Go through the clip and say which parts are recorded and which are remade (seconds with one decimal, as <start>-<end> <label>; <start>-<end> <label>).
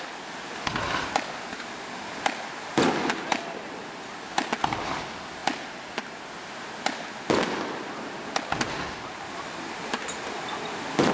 0.0-11.1 recorded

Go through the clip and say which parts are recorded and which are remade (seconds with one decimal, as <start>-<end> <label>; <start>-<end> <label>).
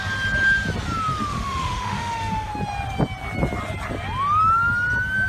0.0-1.1 recorded; 1.1-2.5 remade; 2.5-5.3 recorded